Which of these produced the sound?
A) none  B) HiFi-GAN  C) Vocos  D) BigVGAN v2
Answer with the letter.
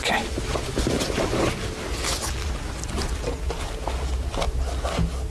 A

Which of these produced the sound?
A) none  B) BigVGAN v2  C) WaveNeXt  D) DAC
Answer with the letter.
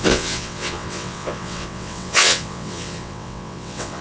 C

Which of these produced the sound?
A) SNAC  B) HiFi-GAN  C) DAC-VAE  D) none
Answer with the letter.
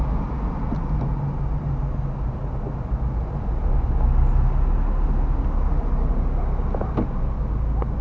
D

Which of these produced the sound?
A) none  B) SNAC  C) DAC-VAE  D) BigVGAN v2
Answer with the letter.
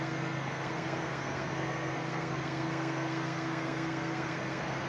B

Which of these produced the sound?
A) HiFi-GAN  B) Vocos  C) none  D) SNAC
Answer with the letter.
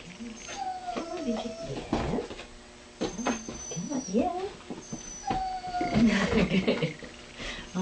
C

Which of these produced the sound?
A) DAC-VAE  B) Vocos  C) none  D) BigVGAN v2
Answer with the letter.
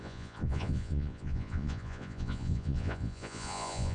B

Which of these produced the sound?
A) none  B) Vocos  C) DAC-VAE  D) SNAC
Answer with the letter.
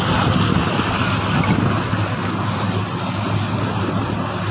A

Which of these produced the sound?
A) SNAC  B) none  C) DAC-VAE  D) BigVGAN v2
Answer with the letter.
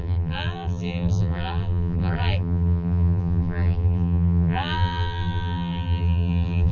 D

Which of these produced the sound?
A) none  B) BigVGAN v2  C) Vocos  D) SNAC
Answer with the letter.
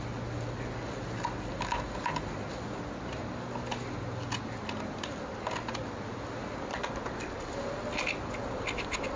A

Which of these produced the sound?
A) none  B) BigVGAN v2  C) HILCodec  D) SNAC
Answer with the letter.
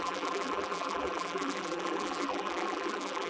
B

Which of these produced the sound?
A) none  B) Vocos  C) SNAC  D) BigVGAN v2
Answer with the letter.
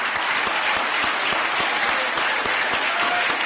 A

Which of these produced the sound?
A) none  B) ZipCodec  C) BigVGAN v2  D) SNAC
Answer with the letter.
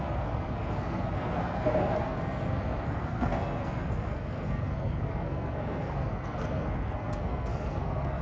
D